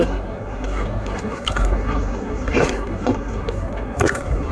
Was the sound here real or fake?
fake